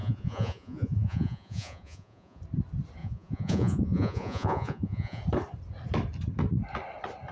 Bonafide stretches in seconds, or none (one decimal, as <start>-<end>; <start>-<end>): 2.4-3.0; 5.2-7.3